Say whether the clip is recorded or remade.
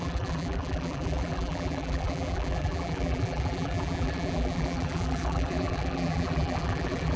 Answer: remade